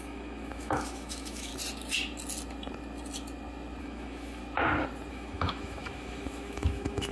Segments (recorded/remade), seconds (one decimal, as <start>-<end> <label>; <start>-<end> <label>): 0.0-1.5 remade; 1.5-3.8 recorded; 3.8-4.4 remade; 4.4-5.1 recorded; 5.1-7.1 remade